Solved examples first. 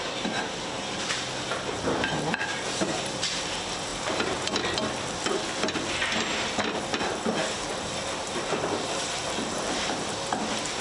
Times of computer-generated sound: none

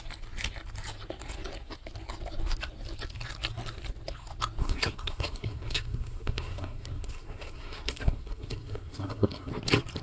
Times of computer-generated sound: 4.6-9.5 (codec, SNAC)

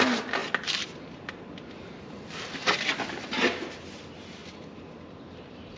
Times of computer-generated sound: none

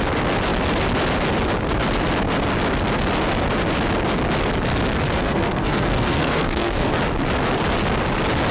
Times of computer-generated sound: 5.2-7.0 (codec, SNAC)